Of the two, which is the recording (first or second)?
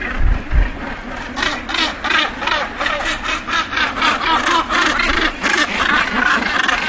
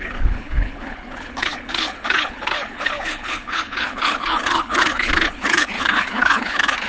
first